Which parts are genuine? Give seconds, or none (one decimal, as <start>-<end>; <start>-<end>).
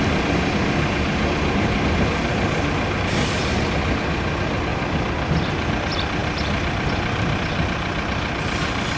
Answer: 0.0-4.7; 5.7-6.2; 6.9-9.0